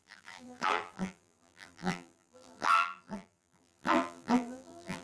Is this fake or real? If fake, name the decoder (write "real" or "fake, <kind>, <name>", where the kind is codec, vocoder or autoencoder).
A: fake, vocoder, BigVGAN v2